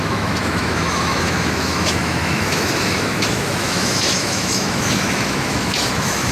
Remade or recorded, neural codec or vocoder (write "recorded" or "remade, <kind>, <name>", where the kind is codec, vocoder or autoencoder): remade, autoencoder, DAC-VAE